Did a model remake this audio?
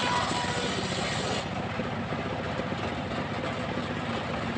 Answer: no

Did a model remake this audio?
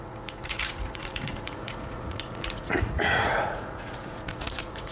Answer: yes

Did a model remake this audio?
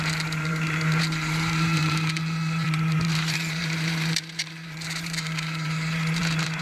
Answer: yes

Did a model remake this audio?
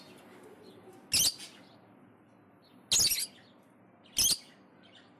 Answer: no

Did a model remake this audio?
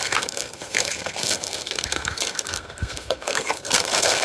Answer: yes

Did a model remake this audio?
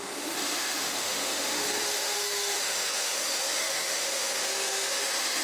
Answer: yes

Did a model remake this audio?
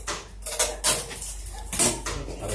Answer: no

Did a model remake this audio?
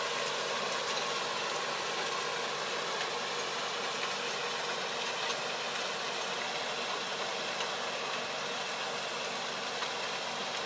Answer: no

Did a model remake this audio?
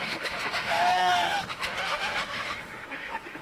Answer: yes